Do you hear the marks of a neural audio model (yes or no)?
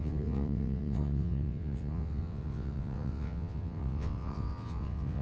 yes